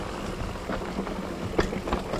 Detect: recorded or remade recorded